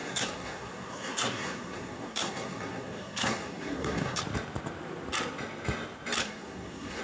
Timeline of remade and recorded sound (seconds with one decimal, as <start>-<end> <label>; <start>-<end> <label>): 0.0-4.2 remade; 4.2-6.2 recorded; 6.2-7.0 remade